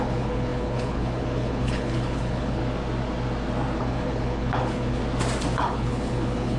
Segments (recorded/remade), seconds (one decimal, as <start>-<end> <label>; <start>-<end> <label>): 0.0-2.6 remade; 2.6-3.8 recorded; 3.8-5.0 remade; 5.0-5.6 recorded; 5.6-6.6 remade